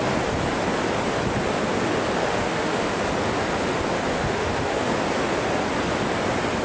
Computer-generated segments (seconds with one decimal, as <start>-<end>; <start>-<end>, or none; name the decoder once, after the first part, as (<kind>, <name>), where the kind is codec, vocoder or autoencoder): 2.2-3.0 (autoencoder, DAC-VAE); 4.1-4.9